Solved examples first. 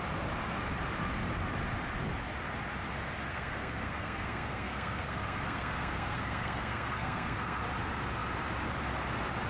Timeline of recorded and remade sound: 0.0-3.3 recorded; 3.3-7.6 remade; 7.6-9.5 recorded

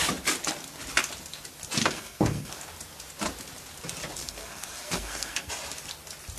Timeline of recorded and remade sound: 0.0-1.8 recorded; 1.8-2.5 remade; 2.5-4.2 recorded; 4.2-5.5 remade; 5.5-6.4 recorded